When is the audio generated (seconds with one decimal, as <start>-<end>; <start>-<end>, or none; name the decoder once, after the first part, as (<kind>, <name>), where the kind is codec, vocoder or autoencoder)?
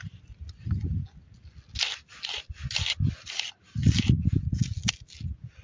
none